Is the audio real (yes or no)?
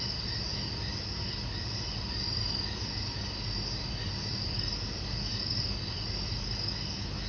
yes